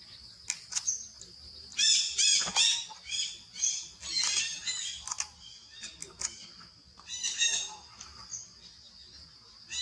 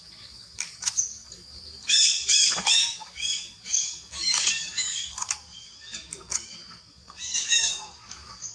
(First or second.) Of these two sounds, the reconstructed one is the second